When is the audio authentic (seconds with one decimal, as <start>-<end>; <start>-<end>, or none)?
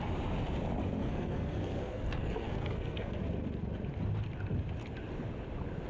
0.0-1.0; 3.2-5.9